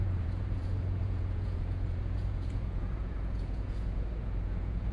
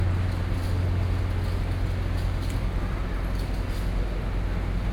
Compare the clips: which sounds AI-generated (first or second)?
first